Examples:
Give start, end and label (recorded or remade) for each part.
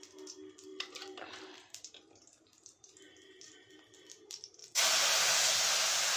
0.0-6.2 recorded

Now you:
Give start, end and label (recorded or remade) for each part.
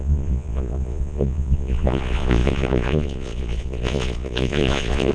0.0-5.1 remade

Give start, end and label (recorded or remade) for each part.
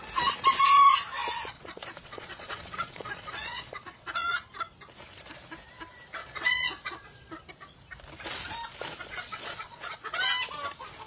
0.0-1.2 recorded; 1.2-4.5 remade; 4.5-6.2 recorded; 6.2-7.4 remade; 7.4-8.9 recorded; 8.9-10.2 remade; 10.2-11.1 recorded